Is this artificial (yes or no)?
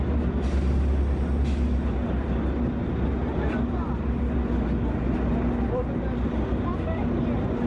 no